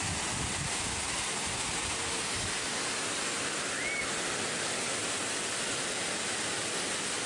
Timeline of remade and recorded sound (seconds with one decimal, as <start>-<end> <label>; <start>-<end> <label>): 0.0-7.3 recorded